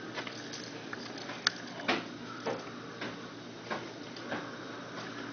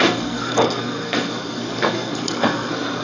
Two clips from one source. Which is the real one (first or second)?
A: first